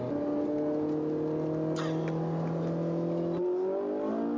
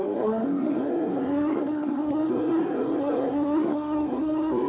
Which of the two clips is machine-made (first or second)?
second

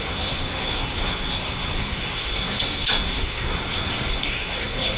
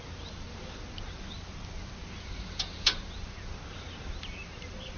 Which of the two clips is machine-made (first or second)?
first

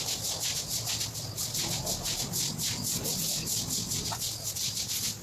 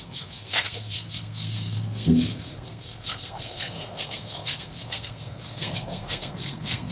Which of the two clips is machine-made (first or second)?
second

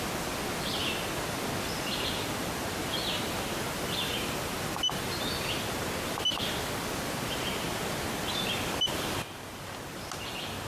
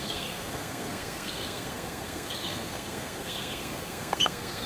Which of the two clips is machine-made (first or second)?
second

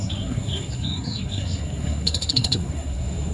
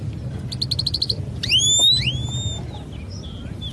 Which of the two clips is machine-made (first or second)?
first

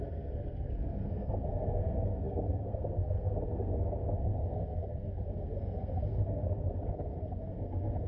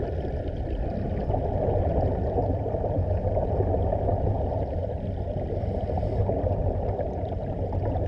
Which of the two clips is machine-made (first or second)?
first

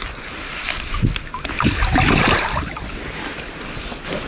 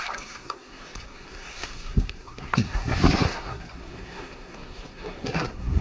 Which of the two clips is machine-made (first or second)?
second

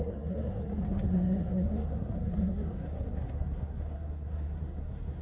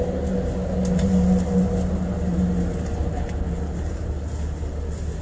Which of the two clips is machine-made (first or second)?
first